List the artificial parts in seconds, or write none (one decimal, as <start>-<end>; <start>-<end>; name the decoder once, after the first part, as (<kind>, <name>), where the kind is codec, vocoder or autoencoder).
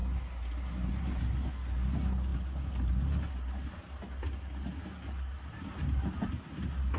none